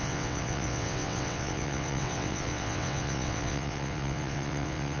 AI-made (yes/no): yes